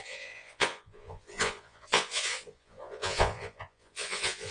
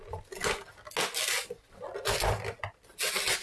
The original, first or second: second